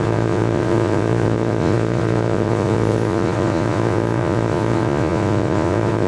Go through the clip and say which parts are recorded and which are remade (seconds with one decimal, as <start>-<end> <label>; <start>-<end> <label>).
0.0-6.1 remade